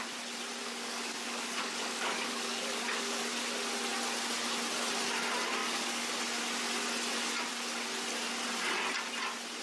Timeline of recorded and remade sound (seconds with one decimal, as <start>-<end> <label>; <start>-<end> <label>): 0.0-0.6 recorded; 0.6-3.2 remade; 3.2-5.6 recorded; 5.6-6.1 remade; 6.1-9.6 recorded